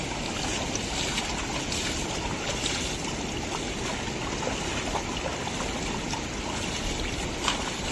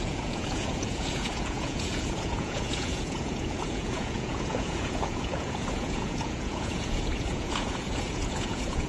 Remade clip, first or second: second